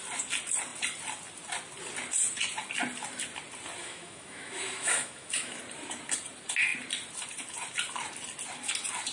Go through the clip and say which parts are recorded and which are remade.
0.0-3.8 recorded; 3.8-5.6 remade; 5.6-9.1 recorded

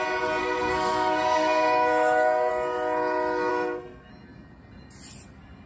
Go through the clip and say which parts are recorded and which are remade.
0.0-0.4 recorded; 0.4-2.5 remade; 2.5-3.5 recorded; 3.5-4.1 remade; 4.1-5.7 recorded

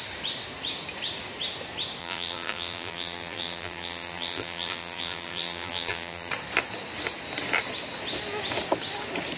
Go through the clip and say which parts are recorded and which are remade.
0.0-2.0 recorded; 2.0-6.3 remade; 6.3-9.4 recorded

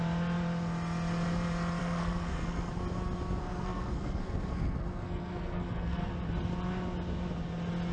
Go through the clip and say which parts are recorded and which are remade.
0.0-1.8 recorded; 1.8-2.7 remade; 2.7-3.4 recorded; 3.4-6.1 remade; 6.1-7.9 recorded

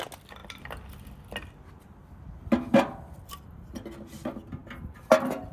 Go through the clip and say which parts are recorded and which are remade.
0.0-5.5 recorded